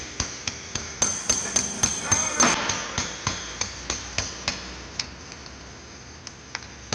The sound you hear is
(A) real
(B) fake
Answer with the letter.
A